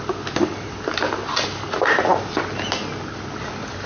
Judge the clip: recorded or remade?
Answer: recorded